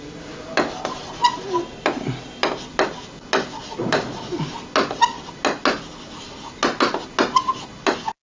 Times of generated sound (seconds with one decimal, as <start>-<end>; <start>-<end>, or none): none